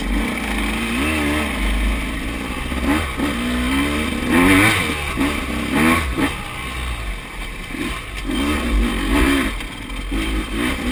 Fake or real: real